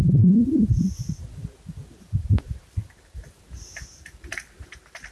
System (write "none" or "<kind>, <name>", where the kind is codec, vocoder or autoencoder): vocoder, BigVGAN v2